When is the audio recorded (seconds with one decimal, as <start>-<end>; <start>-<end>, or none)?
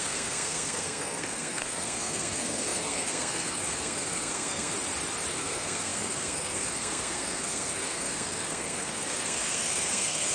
4.7-5.3